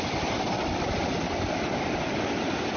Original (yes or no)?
yes